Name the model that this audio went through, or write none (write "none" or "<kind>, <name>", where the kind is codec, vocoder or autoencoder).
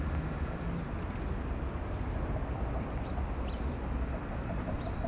none